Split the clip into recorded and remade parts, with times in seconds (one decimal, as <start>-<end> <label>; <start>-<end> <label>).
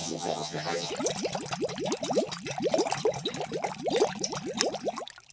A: 0.0-0.9 remade; 0.9-5.3 recorded